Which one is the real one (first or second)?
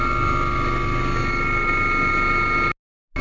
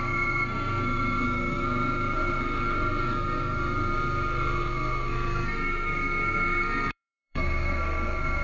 first